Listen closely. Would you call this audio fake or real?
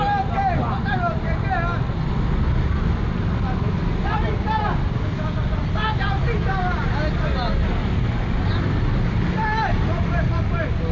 real